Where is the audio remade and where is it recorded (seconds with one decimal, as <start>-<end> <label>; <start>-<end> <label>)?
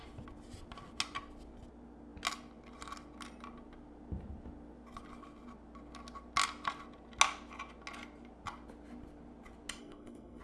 0.0-9.8 recorded; 9.8-10.4 remade